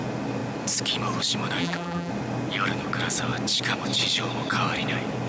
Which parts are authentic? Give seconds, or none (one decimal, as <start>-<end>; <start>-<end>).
0.0-1.6; 2.1-5.3